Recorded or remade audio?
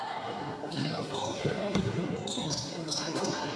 remade